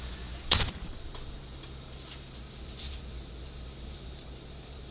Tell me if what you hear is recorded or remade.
remade